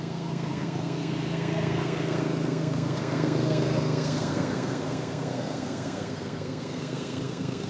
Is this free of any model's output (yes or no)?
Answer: no